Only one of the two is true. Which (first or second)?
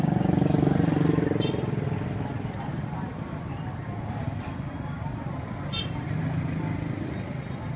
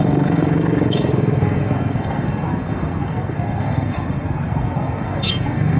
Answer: first